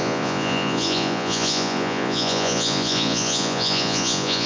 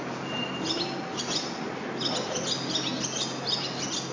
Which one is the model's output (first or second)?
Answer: first